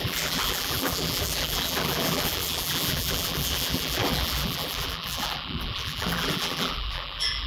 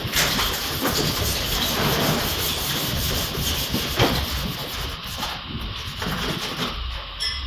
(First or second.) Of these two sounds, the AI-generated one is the first